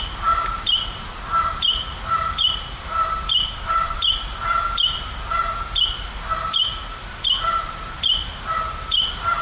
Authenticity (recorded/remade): remade